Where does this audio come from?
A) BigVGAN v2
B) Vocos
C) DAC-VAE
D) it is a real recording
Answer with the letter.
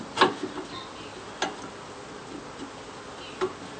D